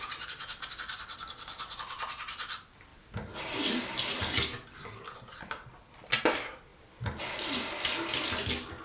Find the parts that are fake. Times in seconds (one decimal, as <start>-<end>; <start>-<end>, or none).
none